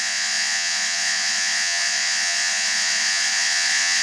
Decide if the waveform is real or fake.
fake